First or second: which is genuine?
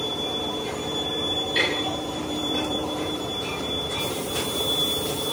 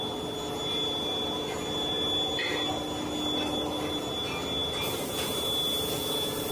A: second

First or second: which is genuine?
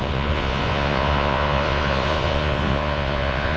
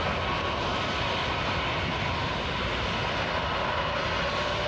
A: second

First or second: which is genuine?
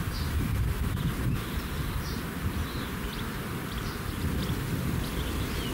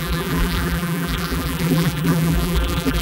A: first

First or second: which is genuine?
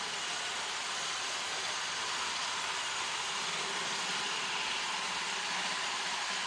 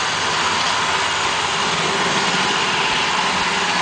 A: second